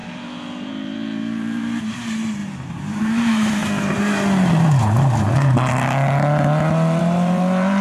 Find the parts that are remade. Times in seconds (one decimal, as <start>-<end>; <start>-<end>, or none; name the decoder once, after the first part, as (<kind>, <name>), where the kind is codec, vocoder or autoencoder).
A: 0.0-3.6 (vocoder, BigVGAN v2); 7.0-7.8

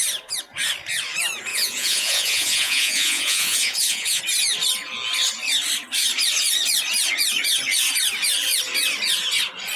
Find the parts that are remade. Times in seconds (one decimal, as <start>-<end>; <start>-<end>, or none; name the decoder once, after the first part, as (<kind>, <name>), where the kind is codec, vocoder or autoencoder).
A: 1.5-4.2 (vocoder, Vocos)

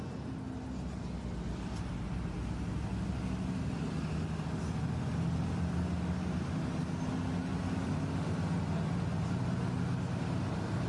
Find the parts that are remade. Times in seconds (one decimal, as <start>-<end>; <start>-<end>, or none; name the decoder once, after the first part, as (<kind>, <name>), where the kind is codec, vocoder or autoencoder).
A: none

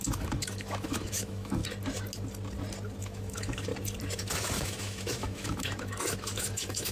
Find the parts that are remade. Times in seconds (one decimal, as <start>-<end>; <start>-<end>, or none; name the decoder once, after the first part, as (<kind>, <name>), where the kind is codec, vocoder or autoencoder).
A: 0.0-1.6 (autoencoder, DAC-VAE); 3.0-3.7; 4.2-6.9

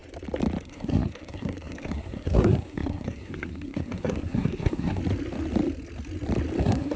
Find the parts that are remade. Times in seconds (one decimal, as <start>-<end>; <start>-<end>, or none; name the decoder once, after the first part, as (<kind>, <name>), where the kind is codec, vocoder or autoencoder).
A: 0.6-5.0 (codec, SNAC); 6.6-7.0